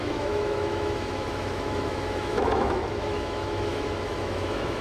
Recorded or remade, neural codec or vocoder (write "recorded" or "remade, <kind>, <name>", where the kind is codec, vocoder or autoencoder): remade, autoencoder, DAC-VAE